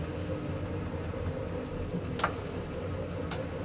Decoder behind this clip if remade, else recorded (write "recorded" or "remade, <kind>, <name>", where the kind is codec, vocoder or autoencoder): recorded